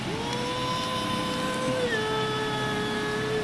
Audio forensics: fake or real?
real